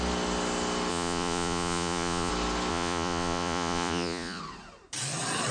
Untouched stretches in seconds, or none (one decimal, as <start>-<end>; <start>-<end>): 0.0-0.9; 2.3-2.7; 4.4-5.5